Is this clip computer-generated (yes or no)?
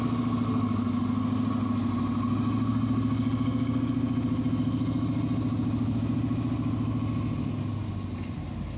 no